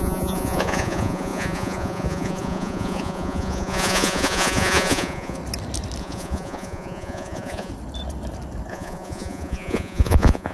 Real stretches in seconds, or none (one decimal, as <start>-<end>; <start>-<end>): 5.4-6.0; 7.7-8.7